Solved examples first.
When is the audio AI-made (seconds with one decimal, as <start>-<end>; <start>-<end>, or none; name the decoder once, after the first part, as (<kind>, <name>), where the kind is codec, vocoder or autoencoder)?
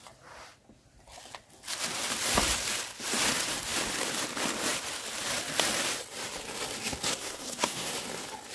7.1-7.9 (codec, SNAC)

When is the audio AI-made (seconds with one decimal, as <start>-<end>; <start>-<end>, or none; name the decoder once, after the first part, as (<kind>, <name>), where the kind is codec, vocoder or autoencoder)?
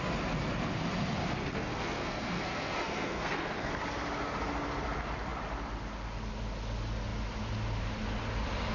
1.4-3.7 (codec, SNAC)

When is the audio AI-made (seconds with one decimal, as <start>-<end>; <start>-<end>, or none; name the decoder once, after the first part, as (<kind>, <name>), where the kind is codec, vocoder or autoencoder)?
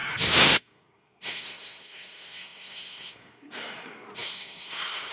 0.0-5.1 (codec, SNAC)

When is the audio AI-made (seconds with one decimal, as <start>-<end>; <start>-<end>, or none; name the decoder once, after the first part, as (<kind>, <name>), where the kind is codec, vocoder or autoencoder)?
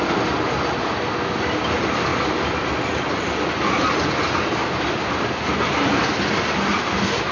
none